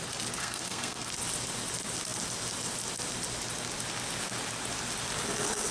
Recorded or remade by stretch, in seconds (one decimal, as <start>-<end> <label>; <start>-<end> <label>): 0.0-0.4 recorded; 0.4-1.1 remade; 1.1-5.7 recorded